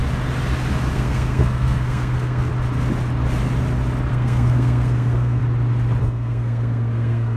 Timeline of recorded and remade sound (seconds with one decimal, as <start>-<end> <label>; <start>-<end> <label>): 0.0-0.9 recorded; 0.9-2.5 remade; 2.5-4.1 recorded; 4.1-5.4 remade; 5.4-6.0 recorded; 6.0-7.4 remade